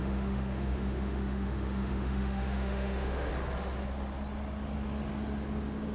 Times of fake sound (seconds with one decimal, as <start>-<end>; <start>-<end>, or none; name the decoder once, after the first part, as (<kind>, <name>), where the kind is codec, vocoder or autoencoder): 0.0-3.3 (autoencoder, DAC-VAE)